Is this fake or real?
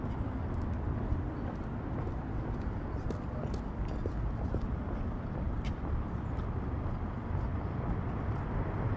fake